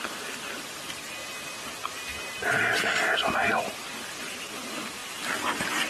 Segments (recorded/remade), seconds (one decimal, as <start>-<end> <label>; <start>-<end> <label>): 0.0-5.9 recorded